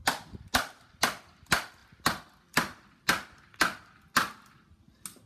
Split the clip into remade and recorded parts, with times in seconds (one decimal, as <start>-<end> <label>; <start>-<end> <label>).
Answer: 0.0-5.3 recorded